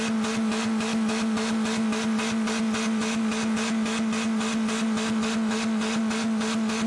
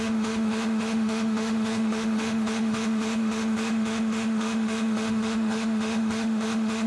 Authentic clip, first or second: first